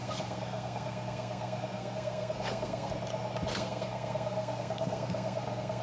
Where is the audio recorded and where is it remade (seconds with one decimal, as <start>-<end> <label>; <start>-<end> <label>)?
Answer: 0.0-2.9 remade; 2.9-3.5 recorded; 3.5-5.8 remade